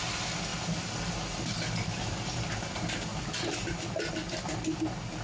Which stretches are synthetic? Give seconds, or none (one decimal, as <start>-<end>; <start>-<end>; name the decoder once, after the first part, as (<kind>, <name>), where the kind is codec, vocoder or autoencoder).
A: 3.1-3.7 (vocoder, BigVGAN v2)